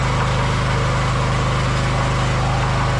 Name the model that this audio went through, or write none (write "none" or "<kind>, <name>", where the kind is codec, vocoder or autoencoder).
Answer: none